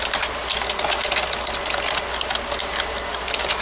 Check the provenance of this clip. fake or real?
real